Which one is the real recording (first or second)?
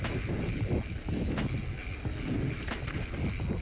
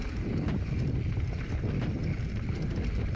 first